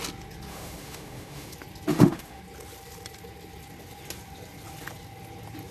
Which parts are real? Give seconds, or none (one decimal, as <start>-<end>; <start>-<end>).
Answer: 0.0-0.5; 1.5-1.9; 2.4-5.7